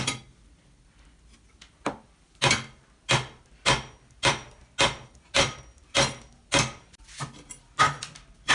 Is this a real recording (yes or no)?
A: yes